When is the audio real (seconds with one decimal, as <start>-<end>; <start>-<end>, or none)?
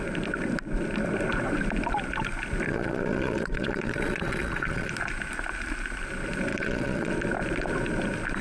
0.0-2.7; 4.9-6.5; 7.1-8.4